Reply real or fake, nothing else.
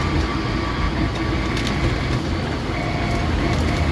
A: real